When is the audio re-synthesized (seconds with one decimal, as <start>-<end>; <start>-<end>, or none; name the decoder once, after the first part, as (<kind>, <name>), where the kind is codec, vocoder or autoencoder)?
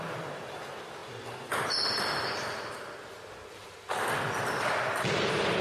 none